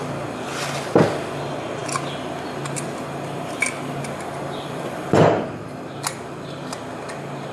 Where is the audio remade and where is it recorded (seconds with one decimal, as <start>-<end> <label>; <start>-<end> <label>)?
0.0-7.5 recorded